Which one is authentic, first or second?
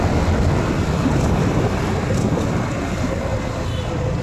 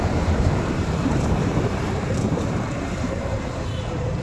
first